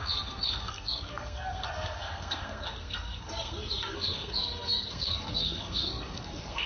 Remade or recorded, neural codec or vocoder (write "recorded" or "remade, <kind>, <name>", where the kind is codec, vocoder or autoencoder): remade, codec, SNAC